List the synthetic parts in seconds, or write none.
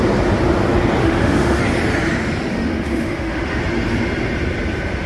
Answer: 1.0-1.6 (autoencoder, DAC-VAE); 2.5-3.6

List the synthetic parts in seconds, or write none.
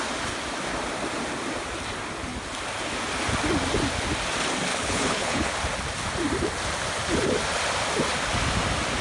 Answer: 4.7-5.5 (codec, HILCodec)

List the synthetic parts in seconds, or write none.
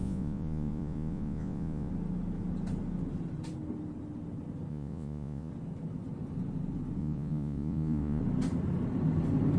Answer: 0.0-1.9 (vocoder, Vocos); 4.7-5.5; 7.0-8.2